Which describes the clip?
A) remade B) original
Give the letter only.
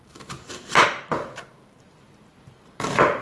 A